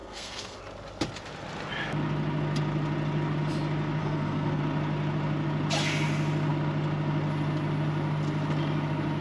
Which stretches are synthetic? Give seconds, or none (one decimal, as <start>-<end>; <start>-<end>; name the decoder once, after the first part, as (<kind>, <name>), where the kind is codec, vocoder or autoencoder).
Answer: 0.0-0.6 (codec, SNAC); 4.0-4.6